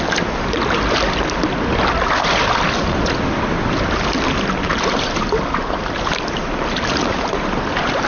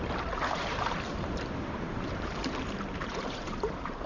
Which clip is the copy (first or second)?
second